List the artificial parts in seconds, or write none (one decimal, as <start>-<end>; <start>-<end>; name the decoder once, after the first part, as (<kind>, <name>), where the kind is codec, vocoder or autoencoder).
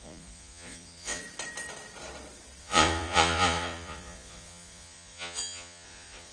0.0-1.2 (vocoder, Vocos); 2.6-6.3